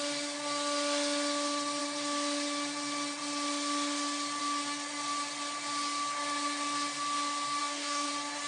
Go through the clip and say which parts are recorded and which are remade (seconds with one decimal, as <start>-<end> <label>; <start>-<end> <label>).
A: 0.0-7.6 recorded; 7.6-8.1 remade; 8.1-8.5 recorded